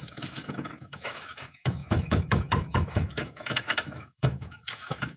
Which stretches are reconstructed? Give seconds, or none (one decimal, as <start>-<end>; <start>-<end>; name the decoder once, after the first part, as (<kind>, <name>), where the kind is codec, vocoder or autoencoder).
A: 0.0-5.2 (autoencoder, DAC-VAE)